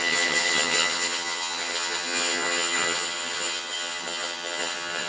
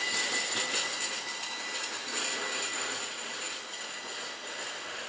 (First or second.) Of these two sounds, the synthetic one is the first